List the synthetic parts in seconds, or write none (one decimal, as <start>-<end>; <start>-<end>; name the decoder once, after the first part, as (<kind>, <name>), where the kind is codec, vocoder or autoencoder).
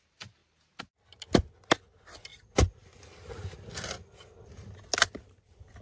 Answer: 0.4-0.9 (vocoder, BigVGAN v2)